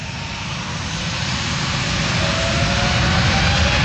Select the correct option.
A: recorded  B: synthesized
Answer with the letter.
A